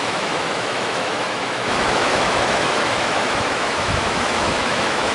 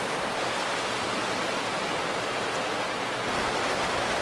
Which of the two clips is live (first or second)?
second